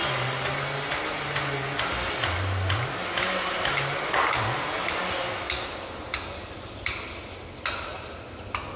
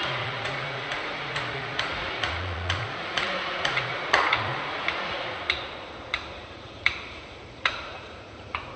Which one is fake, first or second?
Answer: second